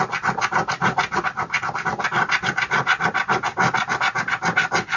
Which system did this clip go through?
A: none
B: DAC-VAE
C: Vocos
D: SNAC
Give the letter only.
A